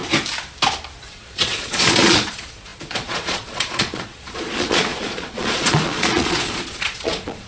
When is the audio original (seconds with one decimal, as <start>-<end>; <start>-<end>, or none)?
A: 0.0-1.0